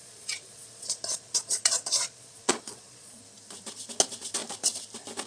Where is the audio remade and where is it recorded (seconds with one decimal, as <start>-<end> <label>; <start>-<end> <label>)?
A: 0.0-3.2 remade; 3.2-5.3 recorded